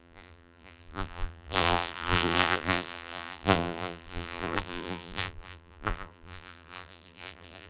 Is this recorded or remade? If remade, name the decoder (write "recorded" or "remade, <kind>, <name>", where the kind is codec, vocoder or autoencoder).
remade, vocoder, BigVGAN v2